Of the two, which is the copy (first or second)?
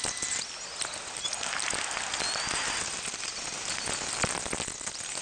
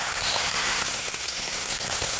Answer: second